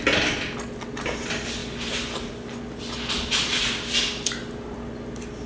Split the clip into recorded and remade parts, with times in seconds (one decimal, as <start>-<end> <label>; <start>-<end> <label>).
0.0-5.5 recorded